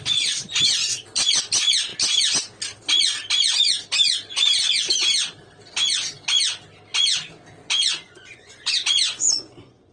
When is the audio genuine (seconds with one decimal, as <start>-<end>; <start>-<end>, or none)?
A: 0.0-7.6